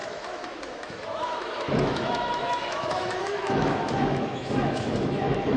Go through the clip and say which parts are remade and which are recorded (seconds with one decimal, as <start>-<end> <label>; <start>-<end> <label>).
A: 0.0-5.6 remade